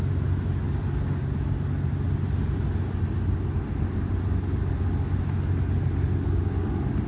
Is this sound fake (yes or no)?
no